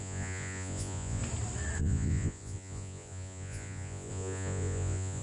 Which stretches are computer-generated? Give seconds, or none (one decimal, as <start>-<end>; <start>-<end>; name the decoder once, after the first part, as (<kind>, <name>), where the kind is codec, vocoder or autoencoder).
0.0-1.2 (vocoder, Vocos); 1.8-5.2